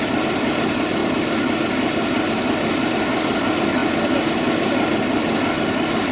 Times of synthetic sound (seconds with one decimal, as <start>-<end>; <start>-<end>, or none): 0.0-1.0; 2.9-3.8; 4.4-6.1